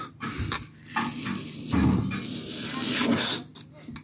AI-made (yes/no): no